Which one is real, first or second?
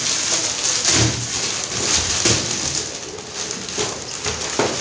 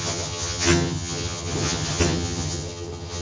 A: first